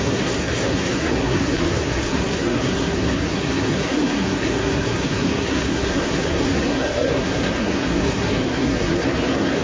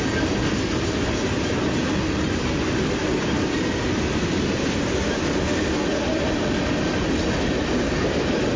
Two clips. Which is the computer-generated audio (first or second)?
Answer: first